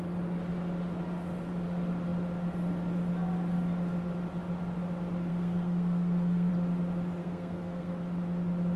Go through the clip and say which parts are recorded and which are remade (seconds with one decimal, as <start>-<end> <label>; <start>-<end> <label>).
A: 0.0-5.3 recorded; 5.3-6.5 remade; 6.5-7.2 recorded; 7.2-7.9 remade; 7.9-8.8 recorded

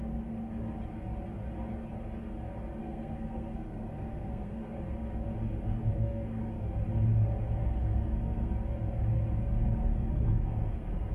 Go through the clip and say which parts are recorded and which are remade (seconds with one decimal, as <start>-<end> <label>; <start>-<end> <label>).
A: 0.0-2.8 recorded; 2.8-4.7 remade; 4.7-5.7 recorded; 5.7-6.4 remade; 6.4-7.6 recorded; 7.6-8.5 remade; 8.5-9.9 recorded; 9.9-11.1 remade

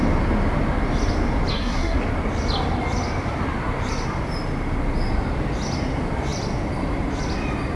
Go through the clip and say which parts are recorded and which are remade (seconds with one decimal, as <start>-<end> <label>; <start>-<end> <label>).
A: 0.0-1.5 recorded; 1.5-2.0 remade; 2.0-7.8 recorded

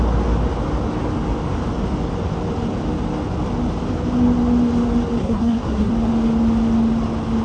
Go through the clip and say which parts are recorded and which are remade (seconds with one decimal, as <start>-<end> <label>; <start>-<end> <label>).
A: 0.0-5.2 recorded; 5.2-5.9 remade; 5.9-7.4 recorded

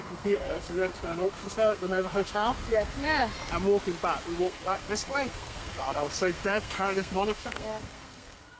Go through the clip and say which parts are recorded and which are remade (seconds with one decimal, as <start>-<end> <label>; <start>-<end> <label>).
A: 0.0-3.2 remade; 3.2-4.4 recorded; 4.4-8.6 remade

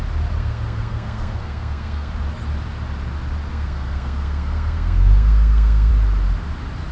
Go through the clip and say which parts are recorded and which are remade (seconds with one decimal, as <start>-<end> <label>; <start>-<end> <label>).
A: 0.0-0.4 recorded; 0.4-2.1 remade; 2.1-3.5 recorded; 3.5-5.9 remade; 5.9-6.9 recorded

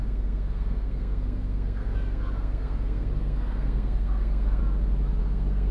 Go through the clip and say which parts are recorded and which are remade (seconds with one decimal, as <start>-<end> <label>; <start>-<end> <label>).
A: 0.0-4.6 remade; 4.6-5.2 recorded; 5.2-5.7 remade

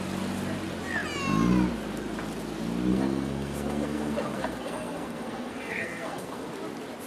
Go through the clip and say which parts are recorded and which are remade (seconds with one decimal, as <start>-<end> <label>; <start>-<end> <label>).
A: 0.0-2.9 recorded; 2.9-6.5 remade; 6.5-7.1 recorded